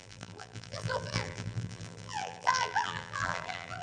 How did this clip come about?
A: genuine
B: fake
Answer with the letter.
B